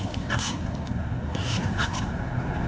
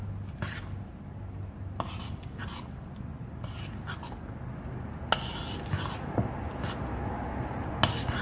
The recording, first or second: second